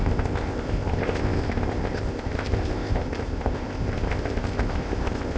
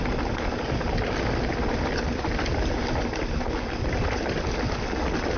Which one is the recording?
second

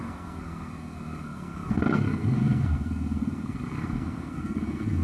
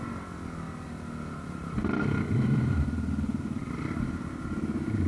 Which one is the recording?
second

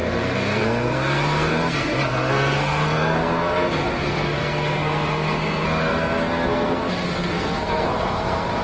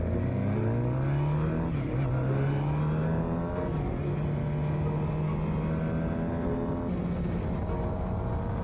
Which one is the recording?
second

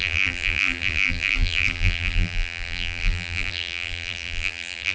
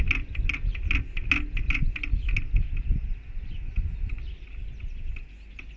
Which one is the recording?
second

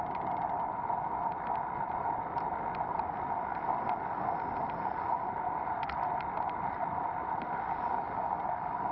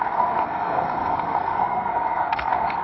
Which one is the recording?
first